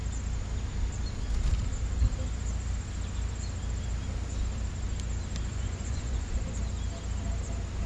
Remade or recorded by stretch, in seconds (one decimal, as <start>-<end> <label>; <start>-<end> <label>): 0.0-5.5 recorded; 5.5-6.4 remade; 6.4-7.9 recorded